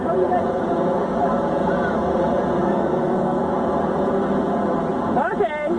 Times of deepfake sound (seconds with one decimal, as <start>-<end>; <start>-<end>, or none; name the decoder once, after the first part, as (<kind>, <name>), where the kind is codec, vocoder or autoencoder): 2.7-3.4 (codec, SNAC)